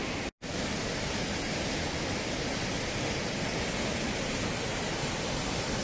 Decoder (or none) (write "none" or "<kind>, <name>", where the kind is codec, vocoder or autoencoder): none